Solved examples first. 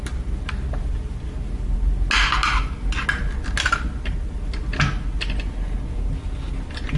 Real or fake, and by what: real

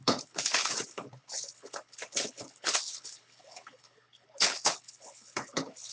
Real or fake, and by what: fake, codec, HILCodec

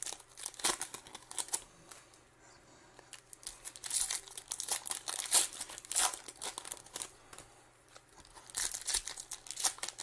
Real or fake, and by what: real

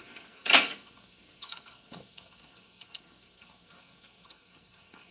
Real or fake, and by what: fake, codec, SNAC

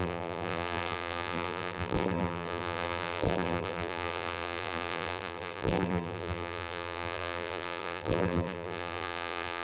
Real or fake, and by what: fake, vocoder, BigVGAN v2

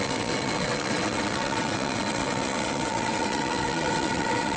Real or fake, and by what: fake, vocoder, WaveNeXt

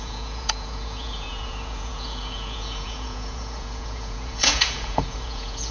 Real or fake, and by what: fake, vocoder, Vocos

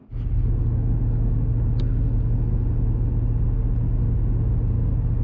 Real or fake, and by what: real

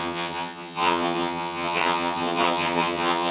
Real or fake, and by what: fake, vocoder, HiFi-GAN